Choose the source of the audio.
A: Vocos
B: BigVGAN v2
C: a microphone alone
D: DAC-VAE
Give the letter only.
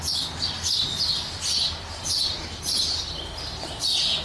C